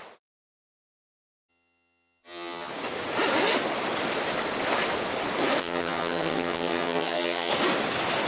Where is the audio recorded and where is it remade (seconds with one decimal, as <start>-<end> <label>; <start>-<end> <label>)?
0.0-1.5 recorded; 1.5-2.7 remade; 2.7-5.6 recorded; 5.6-7.5 remade; 7.5-8.3 recorded